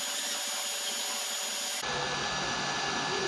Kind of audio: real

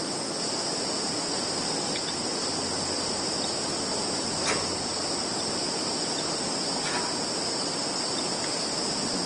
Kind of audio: real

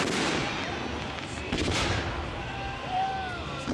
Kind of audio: real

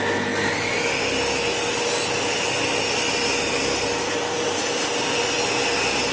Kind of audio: real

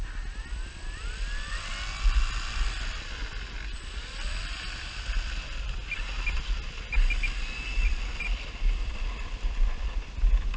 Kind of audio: real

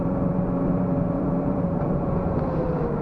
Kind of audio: fake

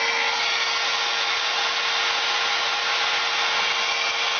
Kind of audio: real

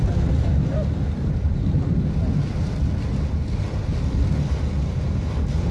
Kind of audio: real